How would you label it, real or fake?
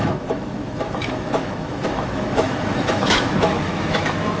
fake